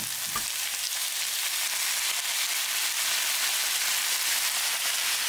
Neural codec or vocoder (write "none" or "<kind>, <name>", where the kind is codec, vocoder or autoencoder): none